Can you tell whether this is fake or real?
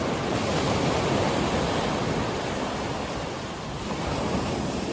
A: real